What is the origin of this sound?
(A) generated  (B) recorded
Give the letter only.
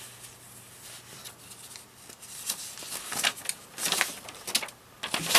B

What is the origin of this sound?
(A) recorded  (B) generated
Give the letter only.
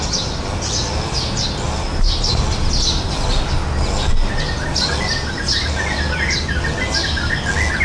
A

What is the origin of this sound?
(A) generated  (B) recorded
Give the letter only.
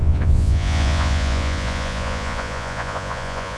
A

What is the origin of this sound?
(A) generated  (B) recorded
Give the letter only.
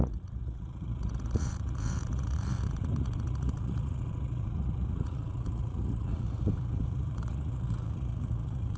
A